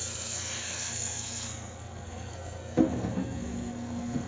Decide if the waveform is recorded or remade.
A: remade